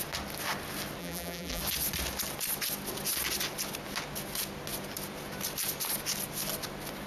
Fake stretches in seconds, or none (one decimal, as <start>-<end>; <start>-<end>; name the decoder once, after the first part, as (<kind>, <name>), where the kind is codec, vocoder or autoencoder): 1.0-1.6 (vocoder, BigVGAN v2)